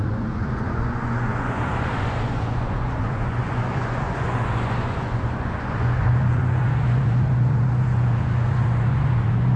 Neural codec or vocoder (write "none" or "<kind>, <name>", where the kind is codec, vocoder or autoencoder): vocoder, Vocos